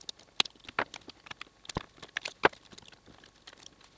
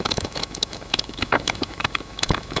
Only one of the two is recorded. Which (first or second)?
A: first